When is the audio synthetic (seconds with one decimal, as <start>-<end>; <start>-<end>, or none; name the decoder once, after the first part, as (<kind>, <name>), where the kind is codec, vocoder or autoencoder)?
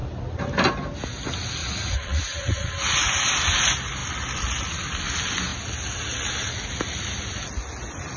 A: 1.6-2.7 (vocoder, Vocos)